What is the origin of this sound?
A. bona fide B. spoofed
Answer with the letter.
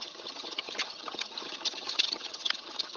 B